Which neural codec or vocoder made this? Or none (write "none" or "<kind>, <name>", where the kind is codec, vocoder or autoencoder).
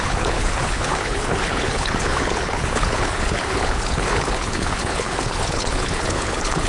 codec, HILCodec